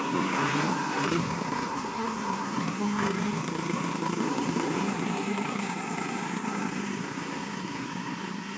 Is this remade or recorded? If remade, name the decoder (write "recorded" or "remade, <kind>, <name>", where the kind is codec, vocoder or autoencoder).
remade, codec, SNAC